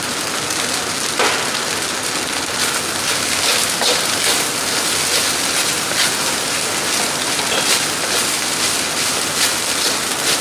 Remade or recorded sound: recorded